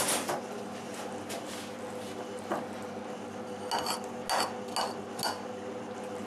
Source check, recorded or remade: recorded